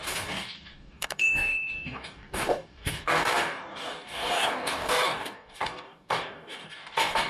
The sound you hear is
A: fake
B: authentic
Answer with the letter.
A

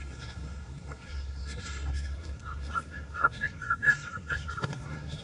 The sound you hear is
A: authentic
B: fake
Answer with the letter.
B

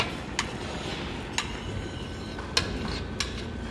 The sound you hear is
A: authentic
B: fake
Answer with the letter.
A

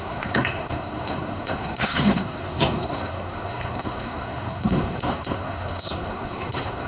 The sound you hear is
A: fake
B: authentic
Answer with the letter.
A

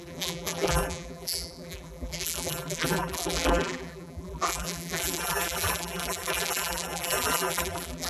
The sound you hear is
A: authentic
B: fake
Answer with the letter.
B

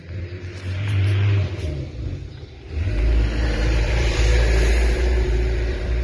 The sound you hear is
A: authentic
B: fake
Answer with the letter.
B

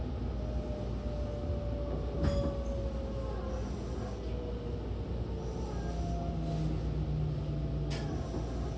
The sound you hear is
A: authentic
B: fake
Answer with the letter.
A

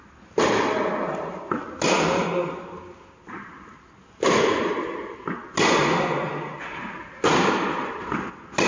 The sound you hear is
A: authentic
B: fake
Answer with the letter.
A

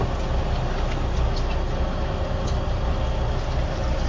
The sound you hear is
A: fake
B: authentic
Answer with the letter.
B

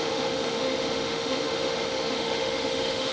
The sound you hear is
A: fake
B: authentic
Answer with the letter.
A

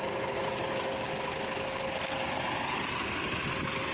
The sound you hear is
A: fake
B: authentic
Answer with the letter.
B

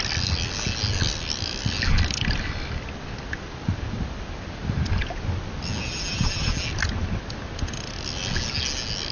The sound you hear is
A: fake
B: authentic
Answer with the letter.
B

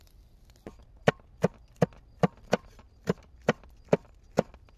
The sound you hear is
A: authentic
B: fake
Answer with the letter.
A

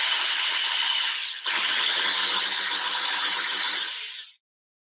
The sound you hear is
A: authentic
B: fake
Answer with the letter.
A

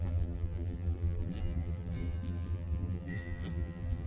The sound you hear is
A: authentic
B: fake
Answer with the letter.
B